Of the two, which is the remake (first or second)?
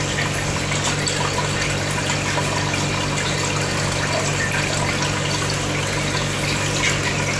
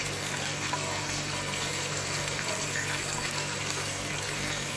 second